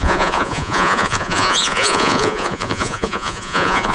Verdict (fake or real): fake